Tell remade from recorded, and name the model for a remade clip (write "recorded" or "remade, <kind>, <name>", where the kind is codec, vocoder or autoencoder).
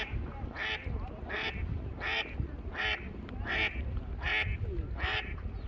recorded